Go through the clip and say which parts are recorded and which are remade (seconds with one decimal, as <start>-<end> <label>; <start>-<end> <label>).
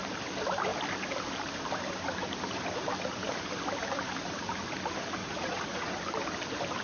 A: 0.0-5.2 recorded; 5.2-6.0 remade; 6.0-6.8 recorded